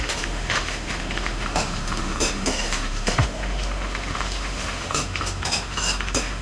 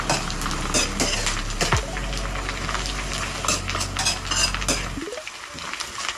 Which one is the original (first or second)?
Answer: second